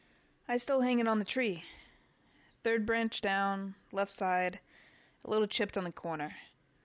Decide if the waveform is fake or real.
real